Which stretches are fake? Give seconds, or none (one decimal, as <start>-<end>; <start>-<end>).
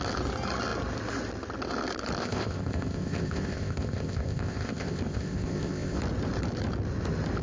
2.2-6.0